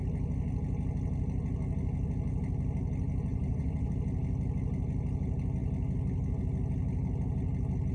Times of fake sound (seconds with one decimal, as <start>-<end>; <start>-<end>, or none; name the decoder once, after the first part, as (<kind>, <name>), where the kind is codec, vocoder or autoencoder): 3.3-3.9 (vocoder, Vocos)